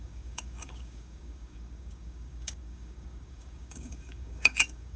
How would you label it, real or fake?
fake